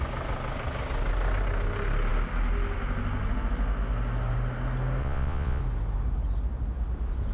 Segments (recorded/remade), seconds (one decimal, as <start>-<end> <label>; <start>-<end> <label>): 0.0-5.0 recorded; 5.0-5.6 remade; 5.6-7.3 recorded